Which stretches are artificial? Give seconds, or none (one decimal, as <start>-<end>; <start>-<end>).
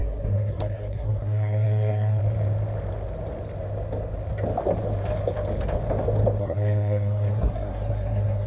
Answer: 0.0-2.2; 6.4-8.5